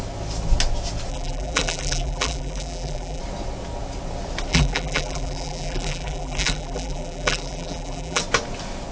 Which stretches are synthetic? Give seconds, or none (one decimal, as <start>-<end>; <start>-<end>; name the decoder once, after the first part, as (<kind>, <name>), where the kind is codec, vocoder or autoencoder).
1.1-3.2 (vocoder, BigVGAN v2); 4.5-8.2